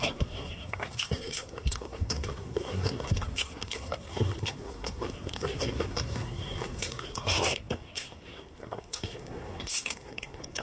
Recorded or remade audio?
remade